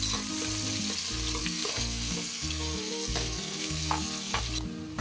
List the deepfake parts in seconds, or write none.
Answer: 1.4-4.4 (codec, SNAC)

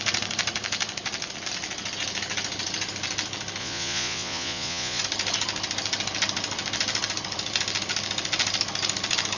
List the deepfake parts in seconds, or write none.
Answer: 3.6-5.0 (vocoder, Vocos)

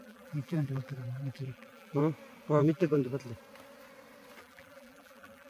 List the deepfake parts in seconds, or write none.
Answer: 0.0-2.0 (vocoder, BigVGAN v2); 2.6-3.1; 4.4-5.5

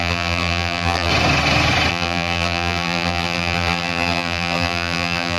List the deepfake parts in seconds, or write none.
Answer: 0.0-1.1 (vocoder, BigVGAN v2); 1.9-5.4

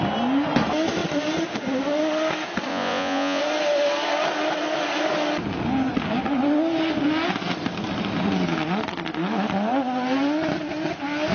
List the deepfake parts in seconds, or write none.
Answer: 2.7-3.4 (vocoder, Vocos)

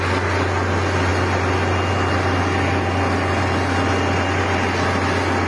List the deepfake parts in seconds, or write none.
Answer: none

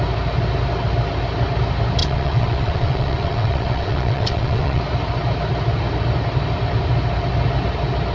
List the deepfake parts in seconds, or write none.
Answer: 2.0-4.8 (vocoder, WaveNeXt)